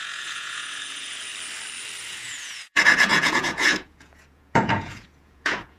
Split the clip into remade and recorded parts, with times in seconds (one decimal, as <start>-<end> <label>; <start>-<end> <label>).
0.0-1.3 remade; 1.3-2.0 recorded; 2.0-5.8 remade